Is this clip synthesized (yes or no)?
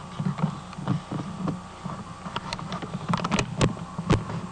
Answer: no